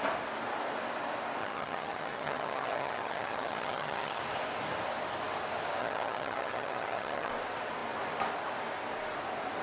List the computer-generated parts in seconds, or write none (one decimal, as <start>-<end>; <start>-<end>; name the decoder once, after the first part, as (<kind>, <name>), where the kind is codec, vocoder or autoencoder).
1.4-4.2 (vocoder, HiFi-GAN); 5.8-7.3